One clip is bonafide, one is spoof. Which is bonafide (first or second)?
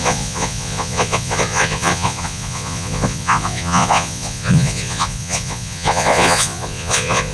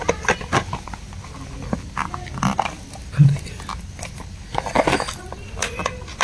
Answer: second